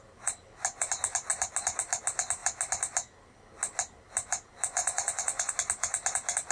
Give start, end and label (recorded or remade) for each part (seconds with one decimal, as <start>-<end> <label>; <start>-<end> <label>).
0.0-4.8 recorded; 4.8-5.5 remade; 5.5-6.5 recorded